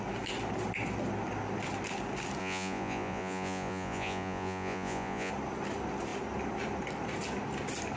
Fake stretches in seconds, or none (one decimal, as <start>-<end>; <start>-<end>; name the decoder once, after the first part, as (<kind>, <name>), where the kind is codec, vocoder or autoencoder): 2.4-5.3 (vocoder, Vocos)